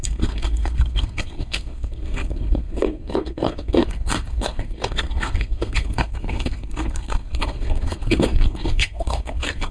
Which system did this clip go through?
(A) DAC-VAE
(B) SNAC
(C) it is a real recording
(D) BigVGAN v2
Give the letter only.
B